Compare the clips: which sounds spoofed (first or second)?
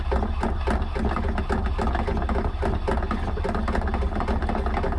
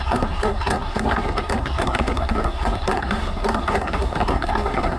second